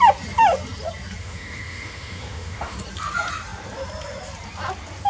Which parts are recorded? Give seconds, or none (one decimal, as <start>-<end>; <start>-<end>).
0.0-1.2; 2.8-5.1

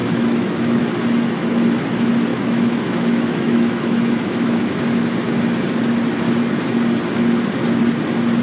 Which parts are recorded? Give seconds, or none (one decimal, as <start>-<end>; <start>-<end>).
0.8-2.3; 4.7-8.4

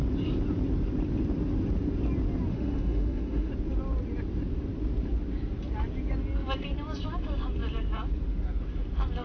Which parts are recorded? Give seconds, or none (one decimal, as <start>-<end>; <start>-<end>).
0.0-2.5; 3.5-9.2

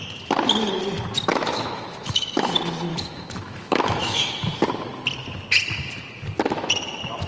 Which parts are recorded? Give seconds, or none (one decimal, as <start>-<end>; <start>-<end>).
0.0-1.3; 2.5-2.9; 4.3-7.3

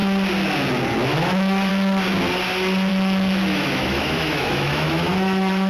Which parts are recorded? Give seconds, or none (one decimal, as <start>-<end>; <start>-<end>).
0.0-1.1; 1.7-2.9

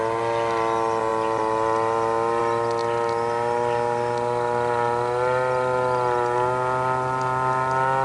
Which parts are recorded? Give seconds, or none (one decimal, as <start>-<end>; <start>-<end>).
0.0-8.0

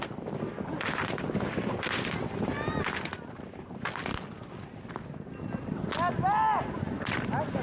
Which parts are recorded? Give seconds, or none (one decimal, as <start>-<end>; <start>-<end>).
0.0-7.6